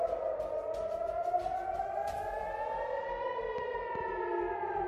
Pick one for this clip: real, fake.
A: real